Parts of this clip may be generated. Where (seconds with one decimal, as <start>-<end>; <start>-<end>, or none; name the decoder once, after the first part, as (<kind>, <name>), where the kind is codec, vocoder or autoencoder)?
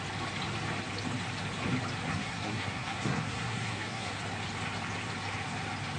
2.1-4.2 (codec, SNAC)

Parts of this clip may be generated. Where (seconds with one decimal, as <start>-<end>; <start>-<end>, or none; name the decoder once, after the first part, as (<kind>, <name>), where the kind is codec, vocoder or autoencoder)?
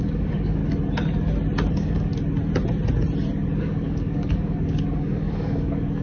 0.0-0.6 (codec, DAC); 1.7-2.1; 3.6-6.0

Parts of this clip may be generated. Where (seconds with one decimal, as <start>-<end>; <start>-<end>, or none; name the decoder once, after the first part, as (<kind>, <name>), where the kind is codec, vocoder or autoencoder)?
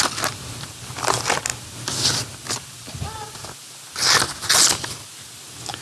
none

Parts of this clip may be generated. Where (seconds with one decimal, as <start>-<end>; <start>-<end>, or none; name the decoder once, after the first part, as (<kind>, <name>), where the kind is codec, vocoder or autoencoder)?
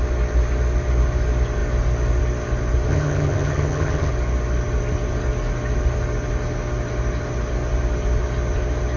2.9-4.1 (vocoder, HiFi-GAN)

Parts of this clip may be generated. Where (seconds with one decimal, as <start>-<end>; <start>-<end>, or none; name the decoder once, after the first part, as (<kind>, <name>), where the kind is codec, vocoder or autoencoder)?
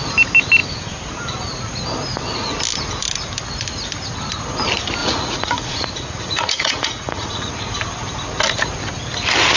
5.0-7.5 (vocoder, Vocos)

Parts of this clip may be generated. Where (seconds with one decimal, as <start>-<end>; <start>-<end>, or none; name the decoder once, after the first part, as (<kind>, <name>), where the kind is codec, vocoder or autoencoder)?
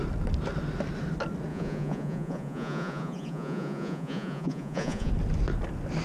1.5-5.1 (vocoder, Vocos)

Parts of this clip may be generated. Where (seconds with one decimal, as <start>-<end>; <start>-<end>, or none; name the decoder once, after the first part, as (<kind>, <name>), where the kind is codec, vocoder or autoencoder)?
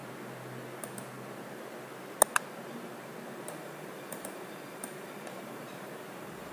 3.5-6.5 (vocoder, BigVGAN v2)